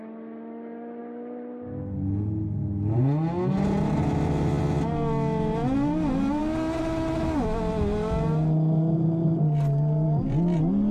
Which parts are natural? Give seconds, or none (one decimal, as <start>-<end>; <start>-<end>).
0.0-10.9